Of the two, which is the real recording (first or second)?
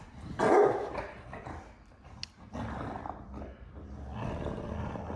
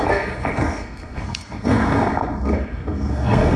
first